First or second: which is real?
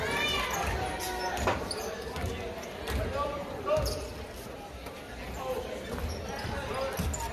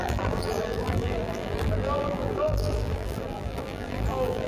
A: first